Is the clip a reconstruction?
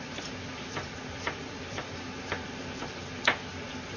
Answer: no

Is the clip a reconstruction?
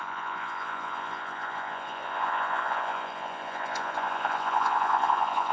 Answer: yes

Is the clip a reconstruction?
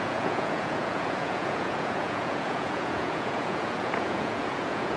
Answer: yes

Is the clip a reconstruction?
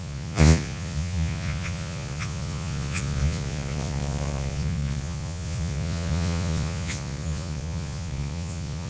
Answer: yes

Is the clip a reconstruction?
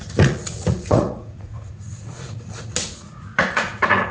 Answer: yes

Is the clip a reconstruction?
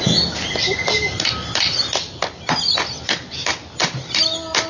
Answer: no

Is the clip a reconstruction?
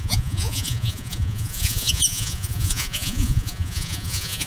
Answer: yes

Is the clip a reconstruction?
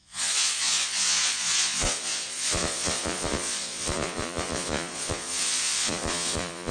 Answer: yes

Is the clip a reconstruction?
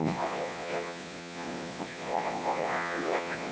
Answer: yes